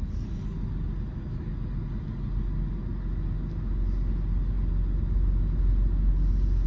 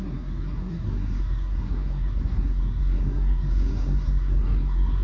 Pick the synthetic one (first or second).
second